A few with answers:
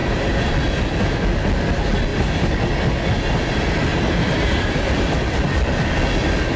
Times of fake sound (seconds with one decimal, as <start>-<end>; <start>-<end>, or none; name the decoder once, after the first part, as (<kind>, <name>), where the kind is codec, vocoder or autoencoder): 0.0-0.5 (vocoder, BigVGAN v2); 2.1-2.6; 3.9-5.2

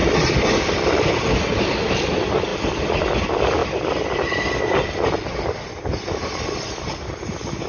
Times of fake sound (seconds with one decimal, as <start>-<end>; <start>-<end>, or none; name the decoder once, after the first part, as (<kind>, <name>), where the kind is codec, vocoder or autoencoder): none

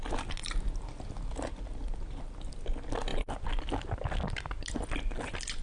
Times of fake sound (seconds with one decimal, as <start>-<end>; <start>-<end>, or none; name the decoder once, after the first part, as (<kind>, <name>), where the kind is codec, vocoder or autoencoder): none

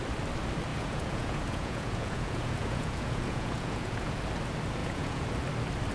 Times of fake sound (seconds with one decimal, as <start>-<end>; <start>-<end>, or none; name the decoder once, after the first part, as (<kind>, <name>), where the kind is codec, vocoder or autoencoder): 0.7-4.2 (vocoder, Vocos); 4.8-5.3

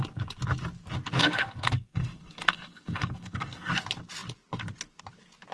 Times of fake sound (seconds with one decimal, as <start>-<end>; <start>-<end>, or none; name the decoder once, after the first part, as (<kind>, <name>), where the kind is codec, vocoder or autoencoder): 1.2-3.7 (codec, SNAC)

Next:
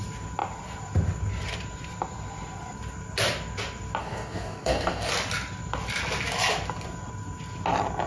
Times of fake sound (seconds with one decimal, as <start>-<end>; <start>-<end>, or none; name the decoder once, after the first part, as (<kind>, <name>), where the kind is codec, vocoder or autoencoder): 4.0-5.1 (codec, DAC)